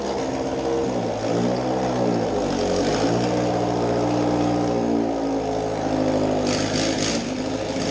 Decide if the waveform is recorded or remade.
recorded